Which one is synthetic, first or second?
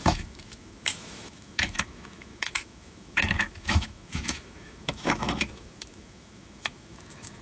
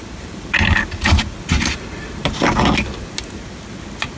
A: first